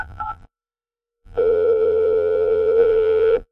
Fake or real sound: fake